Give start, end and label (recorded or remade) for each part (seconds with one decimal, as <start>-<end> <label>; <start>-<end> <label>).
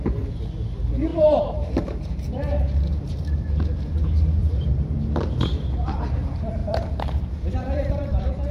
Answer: 0.0-1.1 recorded; 1.1-2.7 remade; 2.7-4.4 recorded; 4.4-5.0 remade; 5.0-6.6 recorded; 6.6-7.2 remade; 7.2-8.5 recorded